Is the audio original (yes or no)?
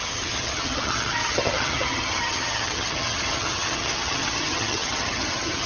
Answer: no